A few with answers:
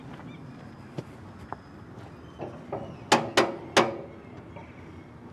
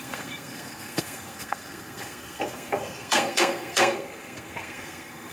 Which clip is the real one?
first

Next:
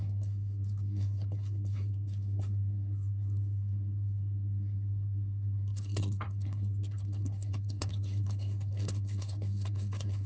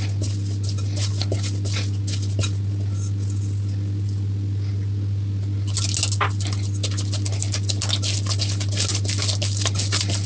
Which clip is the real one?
second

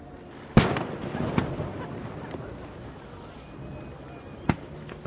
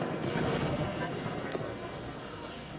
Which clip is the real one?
first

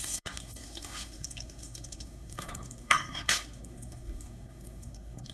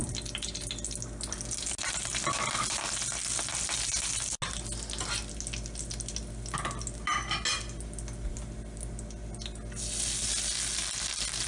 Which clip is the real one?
second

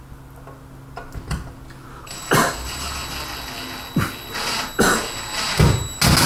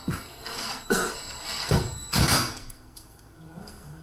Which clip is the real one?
first